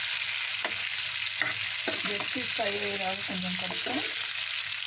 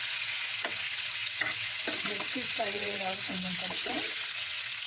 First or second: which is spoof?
second